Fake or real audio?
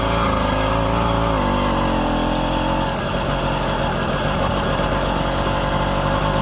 real